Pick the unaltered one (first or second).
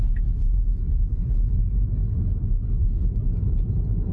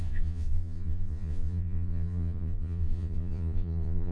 first